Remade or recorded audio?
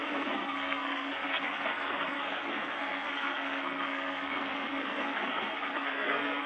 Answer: remade